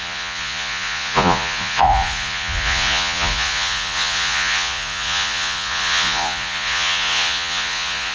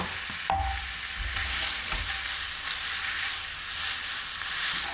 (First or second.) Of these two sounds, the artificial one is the first